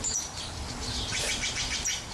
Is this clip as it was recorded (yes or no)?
no